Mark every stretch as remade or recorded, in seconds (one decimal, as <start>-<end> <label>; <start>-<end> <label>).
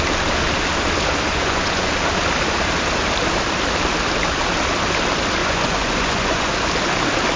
0.0-1.3 recorded; 1.3-1.9 remade; 1.9-5.4 recorded; 5.4-6.5 remade; 6.5-7.4 recorded